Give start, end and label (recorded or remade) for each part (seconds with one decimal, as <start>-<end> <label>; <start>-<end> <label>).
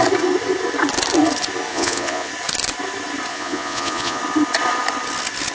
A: 0.0-1.7 recorded; 1.7-2.3 remade; 2.3-3.3 recorded; 3.3-4.2 remade; 4.2-5.5 recorded